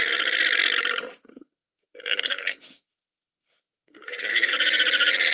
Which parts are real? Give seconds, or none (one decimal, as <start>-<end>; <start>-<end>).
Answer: 0.0-1.3; 4.5-5.3